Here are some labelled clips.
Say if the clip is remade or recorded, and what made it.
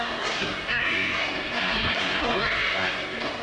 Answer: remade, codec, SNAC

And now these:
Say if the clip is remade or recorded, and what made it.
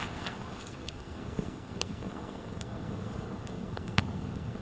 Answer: remade, codec, SNAC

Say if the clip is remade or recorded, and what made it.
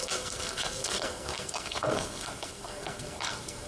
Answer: remade, codec, SNAC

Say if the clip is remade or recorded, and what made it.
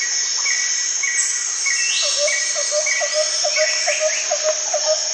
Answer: recorded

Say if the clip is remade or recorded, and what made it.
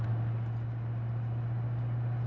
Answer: recorded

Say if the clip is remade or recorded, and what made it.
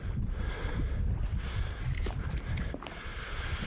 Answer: recorded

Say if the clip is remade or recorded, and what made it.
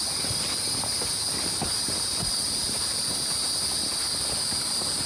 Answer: recorded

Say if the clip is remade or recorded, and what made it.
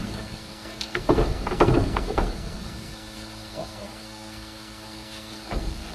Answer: remade, codec, SNAC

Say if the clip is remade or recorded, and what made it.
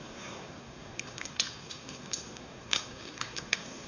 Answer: remade, codec, SNAC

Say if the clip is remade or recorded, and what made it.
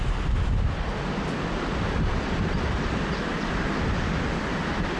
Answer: recorded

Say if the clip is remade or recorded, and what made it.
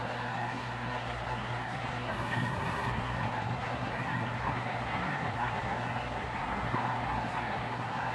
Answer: remade, codec, SNAC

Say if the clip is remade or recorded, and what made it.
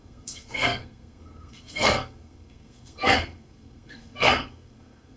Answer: remade, codec, SNAC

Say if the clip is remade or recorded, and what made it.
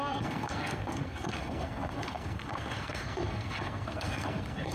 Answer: remade, codec, SNAC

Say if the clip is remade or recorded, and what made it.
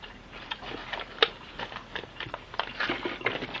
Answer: recorded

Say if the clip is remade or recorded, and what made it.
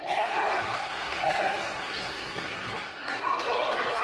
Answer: remade, codec, SNAC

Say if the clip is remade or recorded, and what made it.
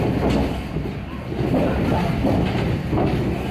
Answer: recorded